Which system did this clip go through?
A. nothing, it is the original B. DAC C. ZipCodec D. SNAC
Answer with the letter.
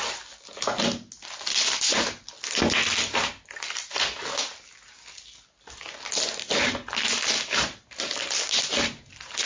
A